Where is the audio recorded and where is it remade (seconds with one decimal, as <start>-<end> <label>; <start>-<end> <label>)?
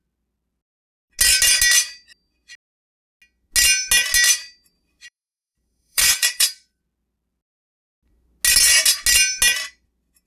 0.0-4.8 recorded; 4.8-6.8 remade; 6.8-10.3 recorded